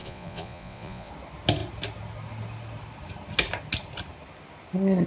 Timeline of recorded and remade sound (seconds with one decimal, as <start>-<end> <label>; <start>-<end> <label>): 0.0-1.1 remade; 1.1-5.1 recorded